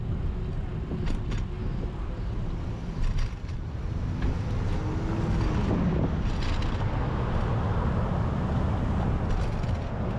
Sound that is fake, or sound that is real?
real